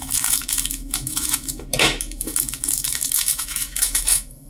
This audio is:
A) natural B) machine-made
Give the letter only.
B